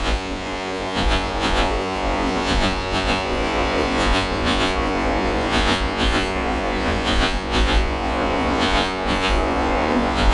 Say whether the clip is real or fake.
fake